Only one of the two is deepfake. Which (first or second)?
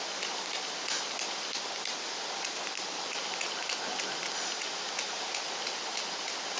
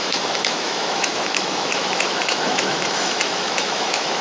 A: second